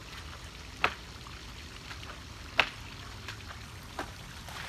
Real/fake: real